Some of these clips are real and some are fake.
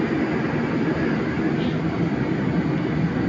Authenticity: real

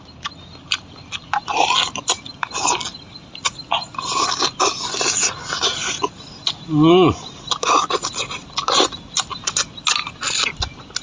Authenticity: real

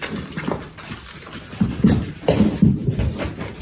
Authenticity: real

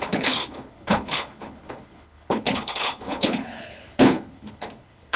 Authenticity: fake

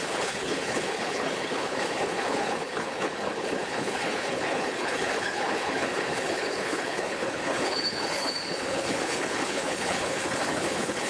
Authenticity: fake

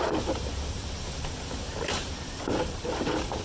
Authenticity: real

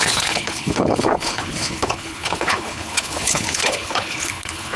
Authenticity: fake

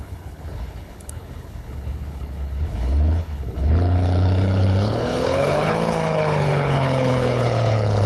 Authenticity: fake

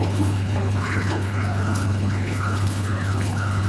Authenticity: fake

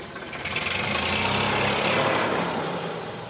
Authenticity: real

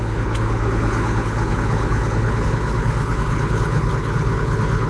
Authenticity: fake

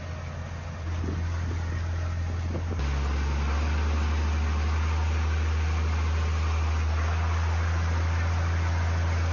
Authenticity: real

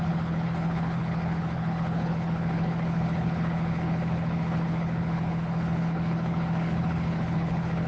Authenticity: fake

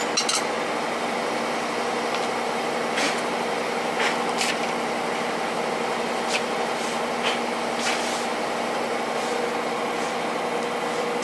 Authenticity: real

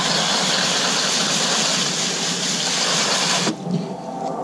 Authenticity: real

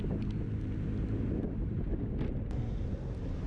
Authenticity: real